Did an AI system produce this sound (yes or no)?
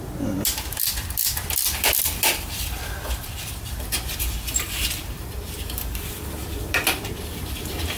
yes